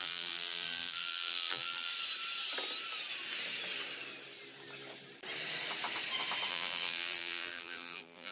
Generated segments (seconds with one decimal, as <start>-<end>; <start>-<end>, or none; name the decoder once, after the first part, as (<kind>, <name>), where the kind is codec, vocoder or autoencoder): 0.0-1.9 (vocoder, BigVGAN v2); 6.5-8.3